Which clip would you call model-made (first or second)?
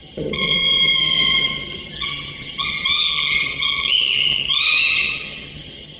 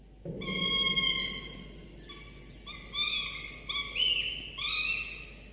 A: first